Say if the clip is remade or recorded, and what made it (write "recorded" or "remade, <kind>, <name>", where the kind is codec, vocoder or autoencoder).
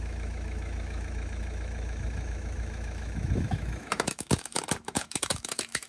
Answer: remade, autoencoder, DAC-VAE